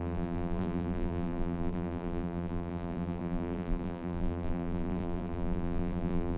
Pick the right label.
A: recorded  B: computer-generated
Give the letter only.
B